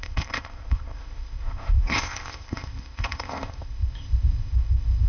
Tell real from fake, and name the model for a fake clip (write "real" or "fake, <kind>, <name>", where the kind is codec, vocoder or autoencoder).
fake, codec, ZipCodec